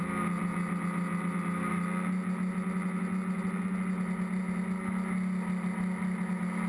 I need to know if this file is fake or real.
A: real